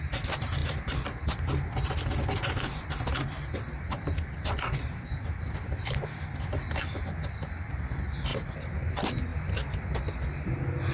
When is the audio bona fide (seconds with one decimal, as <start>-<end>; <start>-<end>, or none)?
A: 0.0-0.6; 5.0-8.3; 8.9-9.3; 10.1-10.9